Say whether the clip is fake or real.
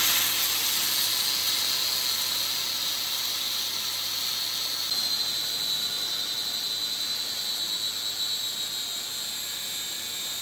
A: real